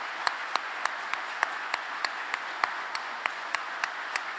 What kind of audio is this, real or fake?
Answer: fake